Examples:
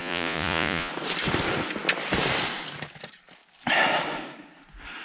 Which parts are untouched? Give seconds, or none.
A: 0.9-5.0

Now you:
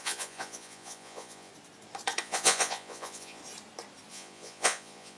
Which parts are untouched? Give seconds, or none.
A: 1.5-2.2; 3.4-4.1

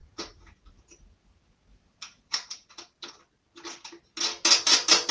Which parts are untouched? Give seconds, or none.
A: 3.1-5.1

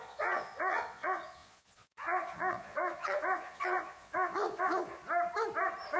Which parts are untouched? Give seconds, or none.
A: 5.0-6.0

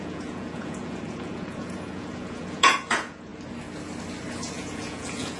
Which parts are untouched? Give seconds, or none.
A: 3.3-4.5

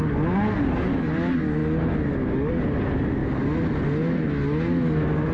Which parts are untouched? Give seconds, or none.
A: 0.0-5.3